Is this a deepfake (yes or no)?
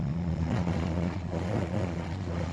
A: yes